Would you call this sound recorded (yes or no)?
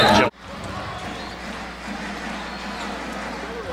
yes